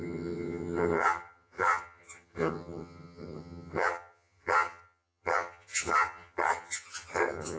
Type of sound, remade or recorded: remade